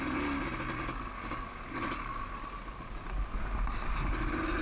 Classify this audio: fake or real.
real